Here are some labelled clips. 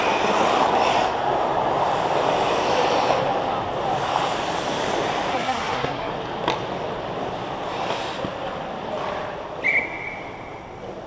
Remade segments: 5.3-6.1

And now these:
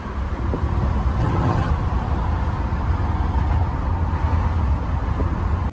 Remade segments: 1.2-1.7

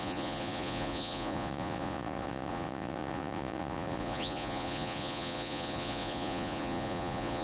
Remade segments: 0.0-7.4